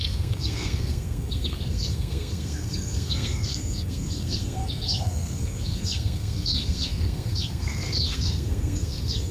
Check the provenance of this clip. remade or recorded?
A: remade